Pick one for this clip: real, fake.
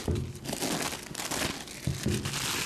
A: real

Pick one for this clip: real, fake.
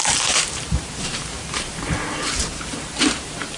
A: fake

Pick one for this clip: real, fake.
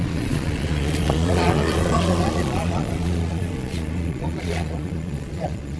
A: fake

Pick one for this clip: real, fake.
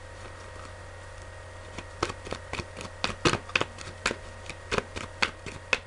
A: real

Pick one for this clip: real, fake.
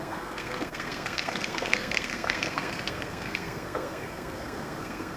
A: fake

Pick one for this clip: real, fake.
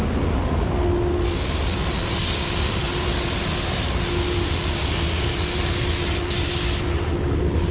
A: real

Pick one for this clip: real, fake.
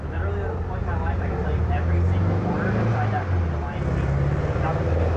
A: real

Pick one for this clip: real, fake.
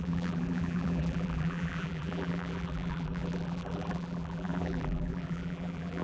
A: fake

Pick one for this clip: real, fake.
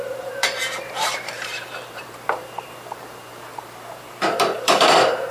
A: fake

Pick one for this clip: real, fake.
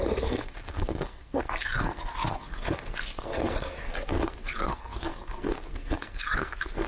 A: fake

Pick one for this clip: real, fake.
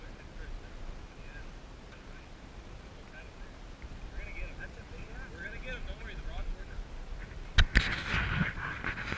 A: real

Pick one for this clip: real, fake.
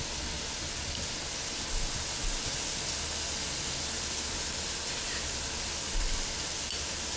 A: real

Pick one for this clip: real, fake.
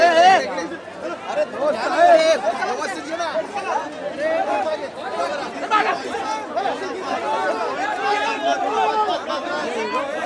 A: real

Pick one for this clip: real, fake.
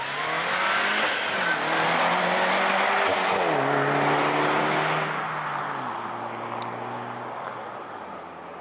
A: real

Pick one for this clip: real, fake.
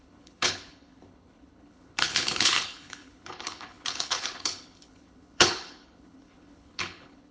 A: fake